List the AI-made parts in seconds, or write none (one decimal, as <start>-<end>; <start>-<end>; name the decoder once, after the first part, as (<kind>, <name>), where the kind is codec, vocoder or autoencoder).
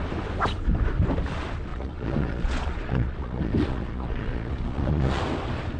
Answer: 1.7-5.2 (vocoder, Vocos)